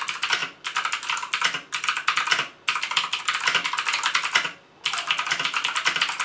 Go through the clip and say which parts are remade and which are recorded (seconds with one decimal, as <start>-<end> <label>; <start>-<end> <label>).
0.0-6.2 recorded